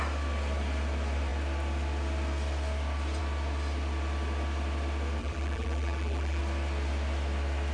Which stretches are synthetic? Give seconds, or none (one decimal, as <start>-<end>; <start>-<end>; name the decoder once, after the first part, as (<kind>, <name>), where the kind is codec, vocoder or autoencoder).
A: 5.2-6.4 (vocoder, BigVGAN v2)